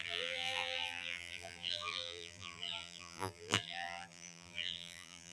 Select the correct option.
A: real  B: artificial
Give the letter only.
B